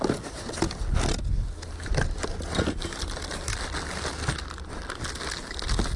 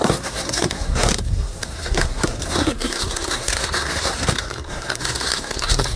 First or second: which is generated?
second